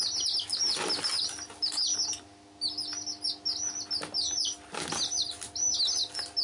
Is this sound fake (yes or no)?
no